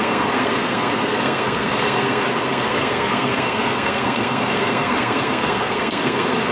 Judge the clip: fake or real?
fake